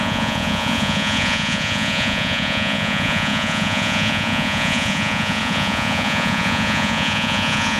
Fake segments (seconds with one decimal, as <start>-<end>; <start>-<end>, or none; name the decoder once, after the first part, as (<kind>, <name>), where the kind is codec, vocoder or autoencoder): 0.0-7.8 (vocoder, Vocos)